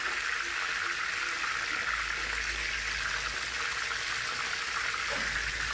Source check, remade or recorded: recorded